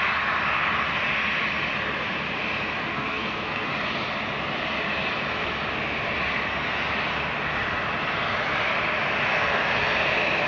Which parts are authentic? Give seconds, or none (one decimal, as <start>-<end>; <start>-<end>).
0.0-2.9; 3.7-10.5